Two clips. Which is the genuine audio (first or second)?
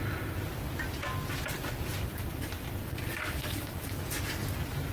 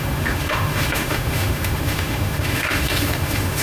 first